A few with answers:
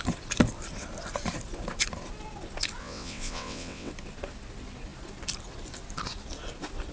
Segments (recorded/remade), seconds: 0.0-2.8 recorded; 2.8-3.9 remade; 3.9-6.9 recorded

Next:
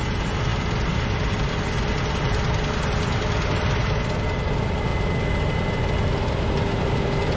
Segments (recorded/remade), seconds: 0.0-7.4 recorded

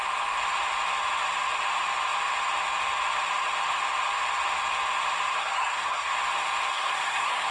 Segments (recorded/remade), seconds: 0.0-5.4 recorded; 5.4-6.1 remade; 6.1-6.7 recorded; 6.7-7.5 remade

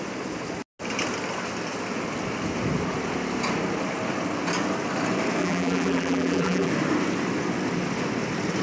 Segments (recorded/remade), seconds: 0.0-5.4 recorded; 5.4-6.7 remade; 6.7-8.6 recorded